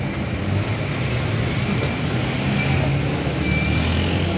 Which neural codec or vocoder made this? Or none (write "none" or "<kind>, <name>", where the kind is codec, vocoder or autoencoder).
none